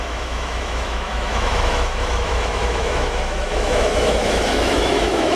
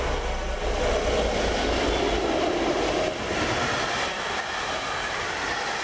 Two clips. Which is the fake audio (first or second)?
first